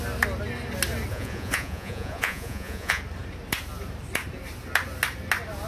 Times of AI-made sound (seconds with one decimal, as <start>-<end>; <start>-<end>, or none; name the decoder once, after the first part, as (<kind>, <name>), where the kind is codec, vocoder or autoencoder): 1.1-3.0 (vocoder, Vocos)